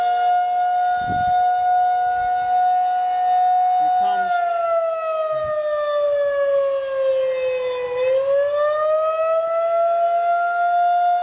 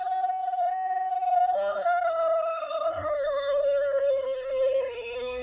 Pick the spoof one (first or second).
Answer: second